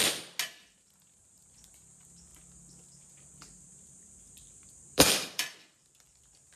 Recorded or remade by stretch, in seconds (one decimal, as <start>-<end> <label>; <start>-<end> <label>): 0.0-2.3 recorded; 2.3-6.6 remade